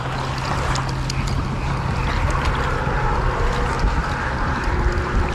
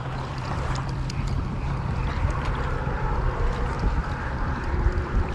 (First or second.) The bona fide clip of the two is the first